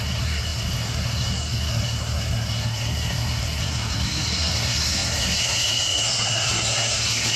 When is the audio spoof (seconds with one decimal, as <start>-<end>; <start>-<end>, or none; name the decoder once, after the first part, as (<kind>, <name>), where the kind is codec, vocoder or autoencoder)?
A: 0.0-7.4 (codec, SNAC)